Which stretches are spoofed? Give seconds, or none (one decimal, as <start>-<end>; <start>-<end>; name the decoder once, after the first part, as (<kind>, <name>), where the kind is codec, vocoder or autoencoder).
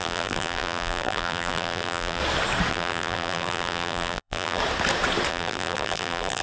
0.0-2.2 (vocoder, BigVGAN v2); 2.7-4.6; 5.3-6.4